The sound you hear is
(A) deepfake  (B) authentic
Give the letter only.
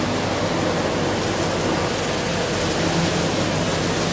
B